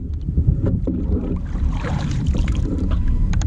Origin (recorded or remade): remade